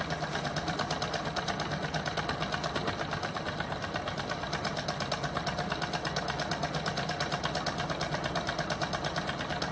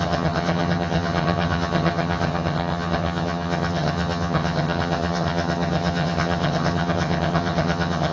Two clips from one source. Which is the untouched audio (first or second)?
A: first